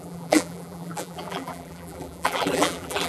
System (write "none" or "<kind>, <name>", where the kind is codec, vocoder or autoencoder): vocoder, BigVGAN v2